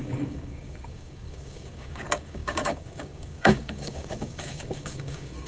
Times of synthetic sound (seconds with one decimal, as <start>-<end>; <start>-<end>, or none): 0.0-5.5